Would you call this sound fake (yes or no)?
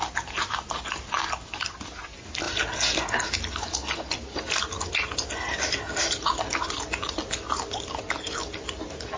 no